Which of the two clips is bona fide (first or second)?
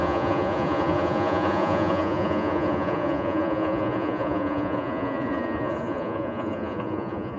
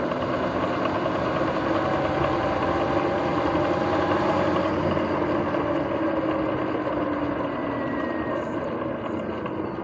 second